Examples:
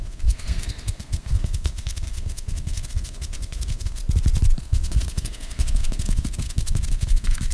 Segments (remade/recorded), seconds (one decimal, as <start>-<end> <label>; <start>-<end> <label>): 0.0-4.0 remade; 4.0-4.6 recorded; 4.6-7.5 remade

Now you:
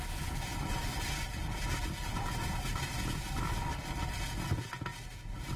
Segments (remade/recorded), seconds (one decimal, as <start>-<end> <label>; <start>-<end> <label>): 0.0-5.6 recorded

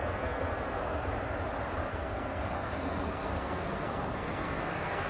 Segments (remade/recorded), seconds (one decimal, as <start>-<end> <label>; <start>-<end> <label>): 0.0-1.1 remade; 1.1-1.9 recorded; 1.9-5.1 remade

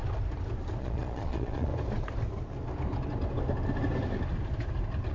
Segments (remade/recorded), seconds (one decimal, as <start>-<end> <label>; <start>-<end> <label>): 0.0-0.8 recorded; 0.8-1.7 remade; 1.7-5.1 recorded

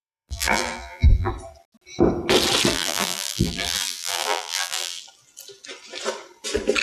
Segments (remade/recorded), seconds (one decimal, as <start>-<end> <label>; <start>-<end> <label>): 0.0-1.3 remade; 1.3-2.7 recorded; 2.7-5.0 remade; 5.0-6.8 recorded